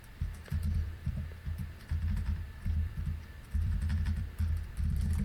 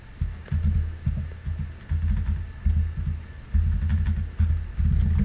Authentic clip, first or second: second